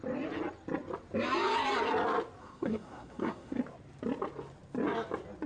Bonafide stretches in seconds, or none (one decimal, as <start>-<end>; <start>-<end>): 0.0-2.4; 3.6-5.5